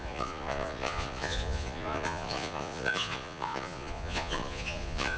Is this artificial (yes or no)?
yes